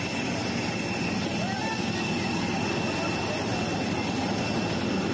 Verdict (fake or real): real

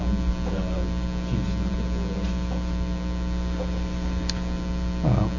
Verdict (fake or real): real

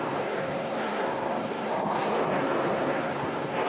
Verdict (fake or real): fake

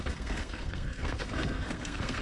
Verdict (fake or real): fake